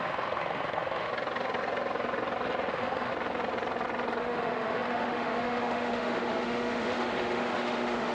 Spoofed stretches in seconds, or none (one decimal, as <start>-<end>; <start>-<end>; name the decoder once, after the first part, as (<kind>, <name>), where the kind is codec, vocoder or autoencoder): 0.0-1.1 (autoencoder, DAC-VAE); 2.7-3.1; 4.2-8.1